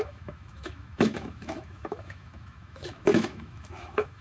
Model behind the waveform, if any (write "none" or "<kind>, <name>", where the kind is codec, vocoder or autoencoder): autoencoder, DAC-VAE